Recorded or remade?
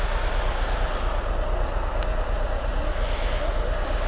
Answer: recorded